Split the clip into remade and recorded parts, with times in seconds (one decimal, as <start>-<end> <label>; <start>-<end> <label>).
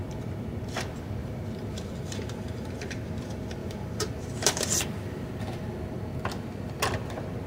0.0-1.2 recorded; 1.2-2.9 remade; 2.9-3.6 recorded; 3.6-4.6 remade; 4.6-7.5 recorded